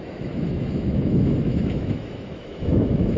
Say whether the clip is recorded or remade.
remade